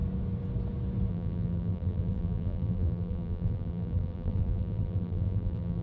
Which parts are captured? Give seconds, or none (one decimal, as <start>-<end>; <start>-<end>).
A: 0.0-1.1